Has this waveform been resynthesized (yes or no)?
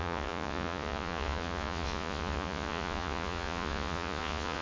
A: yes